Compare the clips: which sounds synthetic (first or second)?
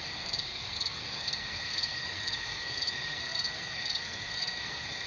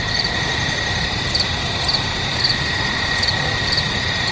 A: first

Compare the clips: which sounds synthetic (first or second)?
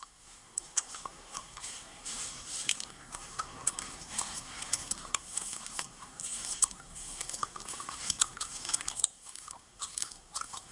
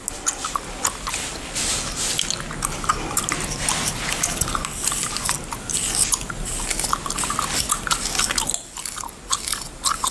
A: first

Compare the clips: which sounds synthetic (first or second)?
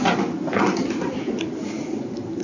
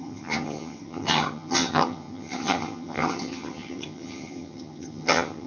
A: second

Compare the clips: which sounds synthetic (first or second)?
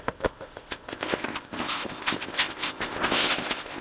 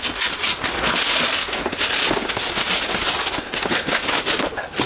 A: first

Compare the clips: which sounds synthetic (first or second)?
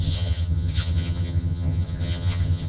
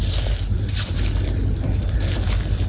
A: first